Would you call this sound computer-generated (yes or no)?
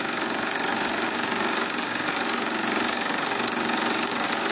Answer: yes